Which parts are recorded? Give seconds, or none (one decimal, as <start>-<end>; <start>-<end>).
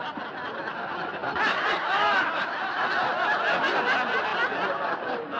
0.0-1.2; 2.8-5.4